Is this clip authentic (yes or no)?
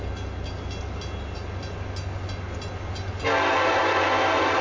yes